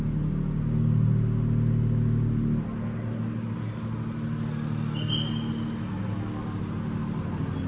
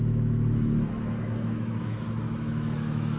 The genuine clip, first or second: first